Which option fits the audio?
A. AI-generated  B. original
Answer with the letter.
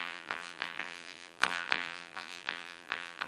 A